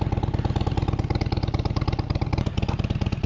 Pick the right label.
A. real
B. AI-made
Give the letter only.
A